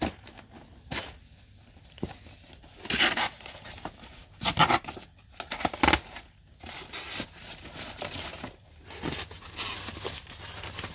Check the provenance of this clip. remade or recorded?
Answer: recorded